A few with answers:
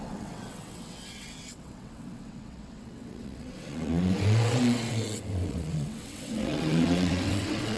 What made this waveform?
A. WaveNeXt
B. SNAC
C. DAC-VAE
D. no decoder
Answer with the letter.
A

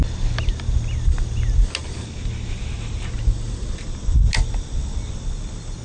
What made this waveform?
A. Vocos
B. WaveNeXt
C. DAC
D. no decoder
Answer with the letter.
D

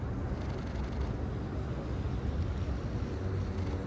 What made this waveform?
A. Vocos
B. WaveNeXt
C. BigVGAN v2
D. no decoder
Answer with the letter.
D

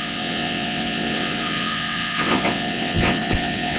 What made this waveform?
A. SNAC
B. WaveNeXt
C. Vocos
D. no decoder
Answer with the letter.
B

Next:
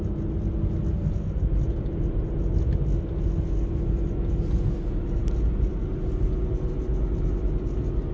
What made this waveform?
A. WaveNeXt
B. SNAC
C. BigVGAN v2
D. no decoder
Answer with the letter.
D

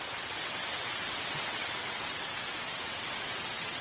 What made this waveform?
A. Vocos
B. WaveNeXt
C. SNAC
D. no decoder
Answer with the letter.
B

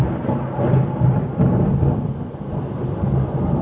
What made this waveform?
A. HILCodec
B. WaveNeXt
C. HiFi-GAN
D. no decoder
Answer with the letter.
D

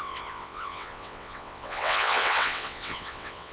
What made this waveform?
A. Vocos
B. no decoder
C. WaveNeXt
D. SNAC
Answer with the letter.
C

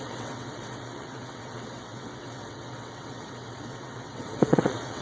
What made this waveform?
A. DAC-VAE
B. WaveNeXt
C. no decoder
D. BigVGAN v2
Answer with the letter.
B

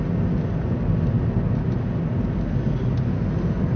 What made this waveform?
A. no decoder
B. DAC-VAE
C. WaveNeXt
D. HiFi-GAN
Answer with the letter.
A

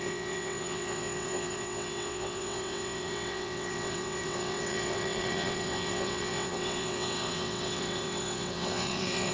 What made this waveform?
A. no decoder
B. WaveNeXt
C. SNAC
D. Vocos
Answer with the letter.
B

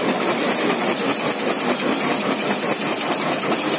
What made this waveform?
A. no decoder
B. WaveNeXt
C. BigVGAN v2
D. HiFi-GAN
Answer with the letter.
A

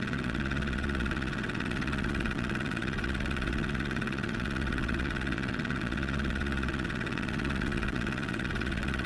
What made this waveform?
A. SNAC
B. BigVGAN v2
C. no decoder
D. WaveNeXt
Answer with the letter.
D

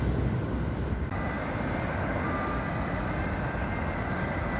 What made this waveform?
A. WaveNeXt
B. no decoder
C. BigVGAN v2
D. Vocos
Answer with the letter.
B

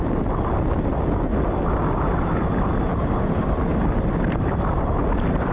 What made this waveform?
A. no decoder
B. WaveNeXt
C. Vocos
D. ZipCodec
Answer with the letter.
A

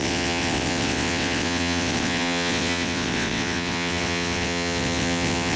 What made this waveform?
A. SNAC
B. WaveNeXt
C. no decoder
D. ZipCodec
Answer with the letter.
B